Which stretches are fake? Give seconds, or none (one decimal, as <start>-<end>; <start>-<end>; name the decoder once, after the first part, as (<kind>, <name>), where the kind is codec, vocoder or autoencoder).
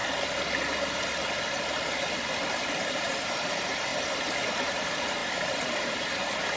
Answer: 2.5-3.9 (vocoder, BigVGAN v2); 4.6-6.6